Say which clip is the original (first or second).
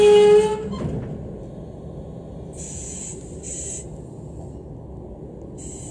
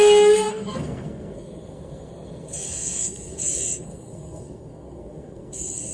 first